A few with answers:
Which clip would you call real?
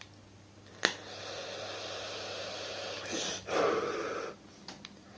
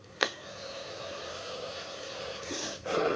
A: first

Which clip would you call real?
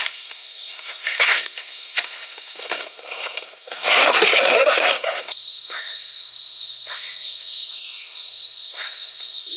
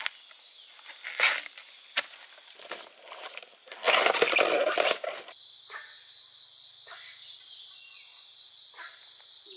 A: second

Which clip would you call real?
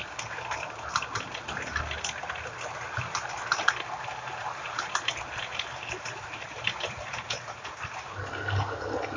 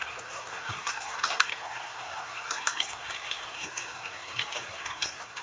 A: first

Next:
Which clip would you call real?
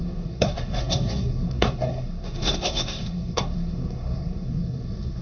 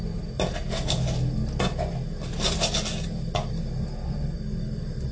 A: second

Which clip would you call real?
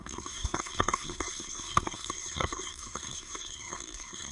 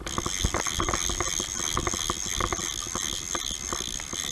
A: second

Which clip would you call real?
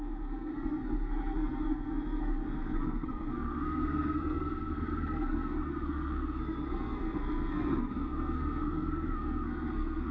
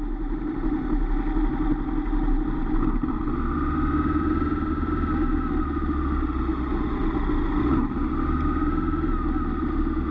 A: second